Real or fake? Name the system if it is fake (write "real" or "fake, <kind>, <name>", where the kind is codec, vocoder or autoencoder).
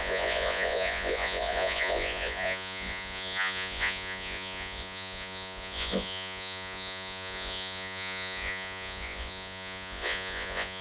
fake, vocoder, Vocos